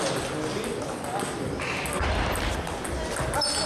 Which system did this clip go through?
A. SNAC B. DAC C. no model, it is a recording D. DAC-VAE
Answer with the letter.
C